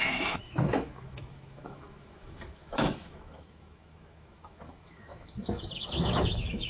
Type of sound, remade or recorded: remade